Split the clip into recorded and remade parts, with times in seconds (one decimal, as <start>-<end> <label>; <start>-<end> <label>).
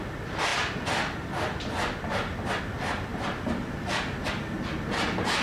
0.0-3.1 recorded; 3.1-4.2 remade; 4.2-5.4 recorded